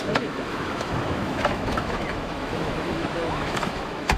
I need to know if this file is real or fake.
fake